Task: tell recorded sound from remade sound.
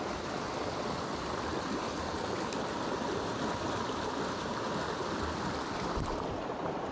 recorded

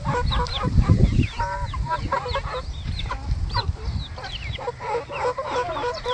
recorded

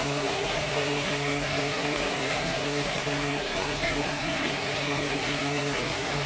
remade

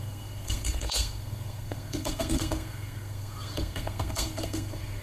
remade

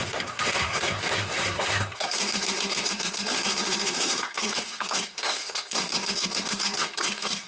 remade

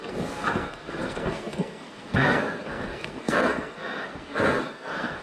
remade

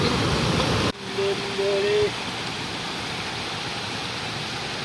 recorded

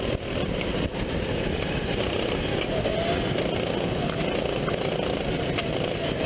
recorded